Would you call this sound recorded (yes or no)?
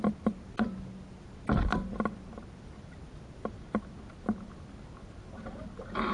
yes